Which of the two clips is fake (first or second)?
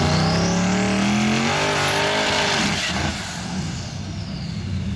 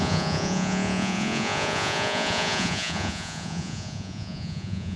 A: second